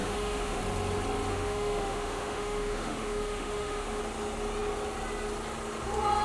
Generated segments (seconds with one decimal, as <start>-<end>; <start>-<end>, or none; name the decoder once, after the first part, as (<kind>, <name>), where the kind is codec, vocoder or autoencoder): 0.0-0.6 (autoencoder, DAC-VAE); 1.3-4.0